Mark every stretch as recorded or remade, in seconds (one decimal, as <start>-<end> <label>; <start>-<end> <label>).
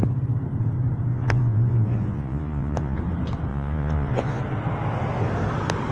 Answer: 0.0-1.1 recorded; 1.1-3.0 remade; 3.0-3.5 recorded; 3.5-4.4 remade; 4.4-5.9 recorded